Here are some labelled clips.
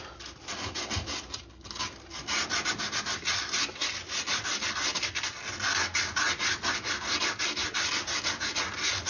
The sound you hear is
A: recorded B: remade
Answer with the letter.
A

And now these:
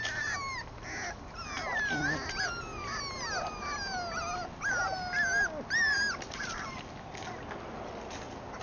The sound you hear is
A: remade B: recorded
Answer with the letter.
B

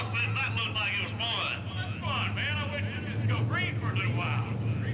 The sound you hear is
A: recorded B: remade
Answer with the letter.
A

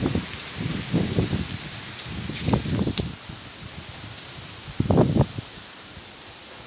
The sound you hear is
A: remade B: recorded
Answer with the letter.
B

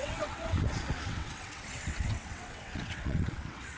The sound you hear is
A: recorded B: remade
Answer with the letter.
B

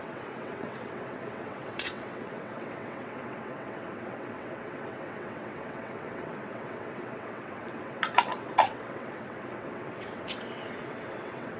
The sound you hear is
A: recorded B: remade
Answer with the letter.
B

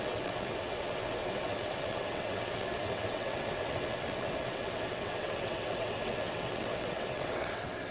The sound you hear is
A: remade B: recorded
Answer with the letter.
A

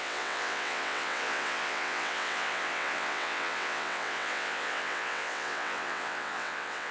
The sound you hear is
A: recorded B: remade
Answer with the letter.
B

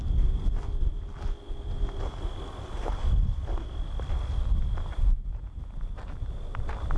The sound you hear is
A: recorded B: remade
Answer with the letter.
A